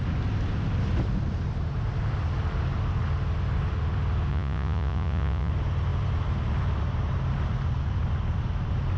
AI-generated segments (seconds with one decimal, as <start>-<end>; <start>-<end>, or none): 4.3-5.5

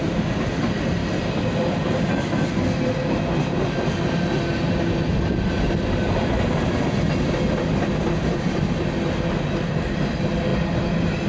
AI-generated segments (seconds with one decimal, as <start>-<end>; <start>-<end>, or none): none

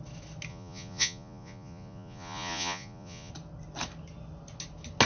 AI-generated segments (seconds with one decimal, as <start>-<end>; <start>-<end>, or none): 0.5-3.3

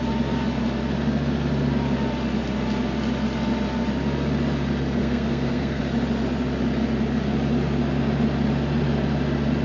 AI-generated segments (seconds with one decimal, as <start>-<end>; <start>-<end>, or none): 5.0-5.8